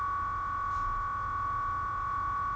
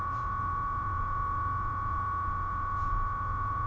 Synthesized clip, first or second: second